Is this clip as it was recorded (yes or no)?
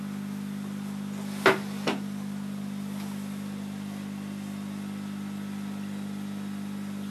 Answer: yes